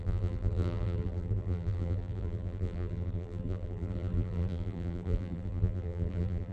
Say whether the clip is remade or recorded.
remade